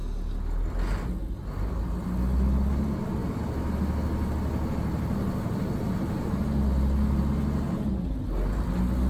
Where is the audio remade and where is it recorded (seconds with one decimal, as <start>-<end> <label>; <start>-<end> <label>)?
0.0-9.1 recorded